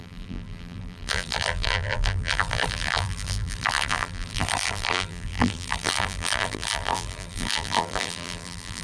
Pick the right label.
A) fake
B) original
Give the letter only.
A